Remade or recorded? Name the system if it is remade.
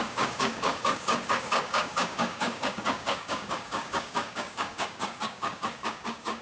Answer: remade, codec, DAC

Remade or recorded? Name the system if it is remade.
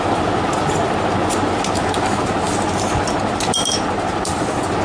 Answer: recorded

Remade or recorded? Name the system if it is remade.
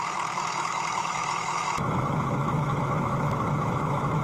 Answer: remade, autoencoder, DAC-VAE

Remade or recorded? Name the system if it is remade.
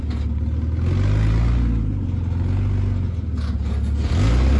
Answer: recorded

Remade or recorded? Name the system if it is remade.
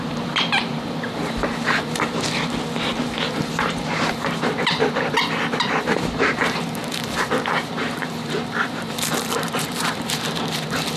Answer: remade, vocoder, BigVGAN v2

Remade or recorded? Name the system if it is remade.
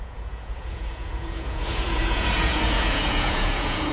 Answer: remade, vocoder, Vocos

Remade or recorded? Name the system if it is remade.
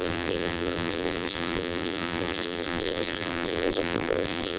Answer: remade, vocoder, BigVGAN v2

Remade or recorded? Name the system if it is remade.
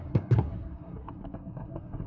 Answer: remade, codec, SNAC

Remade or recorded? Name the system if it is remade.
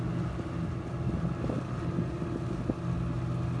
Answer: recorded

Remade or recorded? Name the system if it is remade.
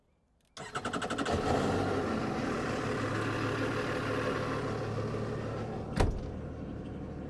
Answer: recorded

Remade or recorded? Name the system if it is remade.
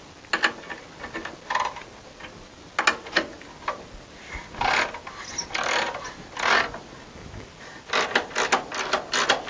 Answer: recorded